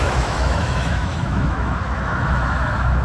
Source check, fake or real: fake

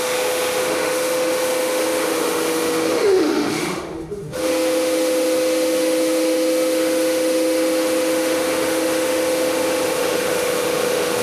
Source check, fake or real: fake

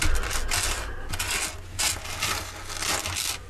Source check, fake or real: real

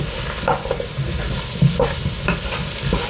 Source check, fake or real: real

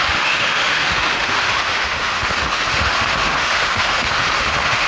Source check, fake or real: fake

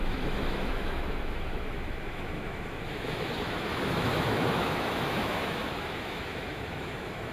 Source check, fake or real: fake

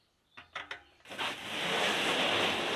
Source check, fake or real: real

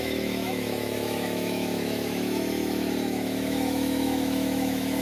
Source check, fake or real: fake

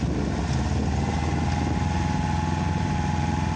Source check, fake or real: real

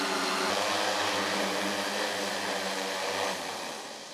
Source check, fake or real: real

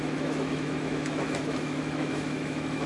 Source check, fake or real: fake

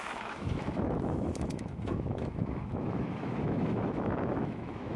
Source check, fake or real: fake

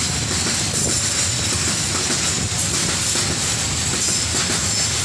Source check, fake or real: real